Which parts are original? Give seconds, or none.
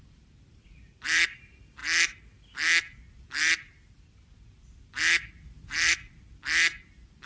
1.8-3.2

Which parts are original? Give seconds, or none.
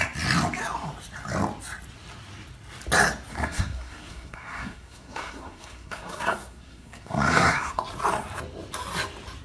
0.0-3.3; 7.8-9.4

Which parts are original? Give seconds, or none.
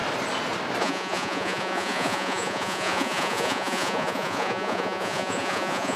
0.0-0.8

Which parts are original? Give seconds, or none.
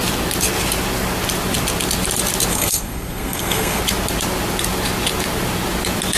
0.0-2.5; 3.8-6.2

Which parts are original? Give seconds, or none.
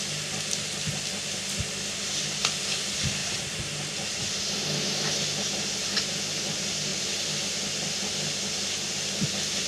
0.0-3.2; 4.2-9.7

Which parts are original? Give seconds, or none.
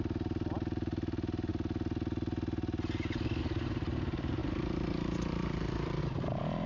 1.5-3.4